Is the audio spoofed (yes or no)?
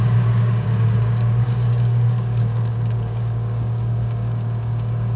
yes